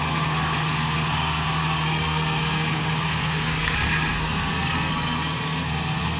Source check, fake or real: fake